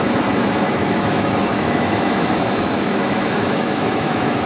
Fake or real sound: fake